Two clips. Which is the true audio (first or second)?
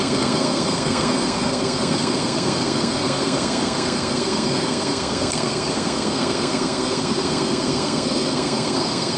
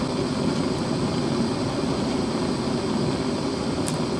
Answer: second